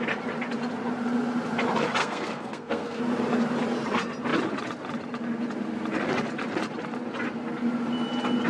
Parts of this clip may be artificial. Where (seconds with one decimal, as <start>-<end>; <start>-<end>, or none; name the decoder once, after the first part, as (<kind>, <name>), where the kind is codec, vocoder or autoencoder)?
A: 2.0-3.0 (codec, SNAC)